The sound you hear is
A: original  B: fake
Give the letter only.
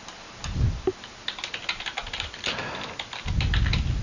A